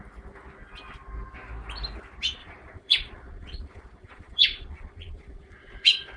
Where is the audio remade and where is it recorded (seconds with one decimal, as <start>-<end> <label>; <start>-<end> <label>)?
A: 0.0-2.4 recorded; 2.4-6.2 remade